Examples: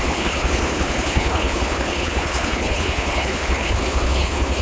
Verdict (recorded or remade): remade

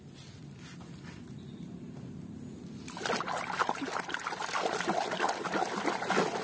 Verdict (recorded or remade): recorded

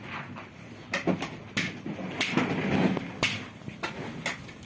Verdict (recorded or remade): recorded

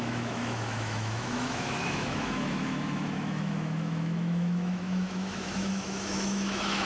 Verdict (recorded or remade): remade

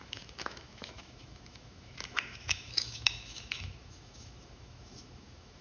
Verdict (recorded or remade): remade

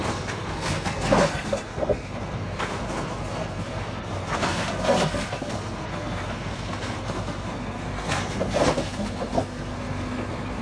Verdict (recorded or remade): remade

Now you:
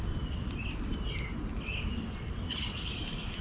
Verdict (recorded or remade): recorded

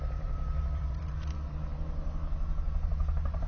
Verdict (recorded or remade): remade